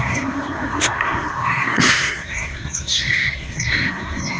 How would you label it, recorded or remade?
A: remade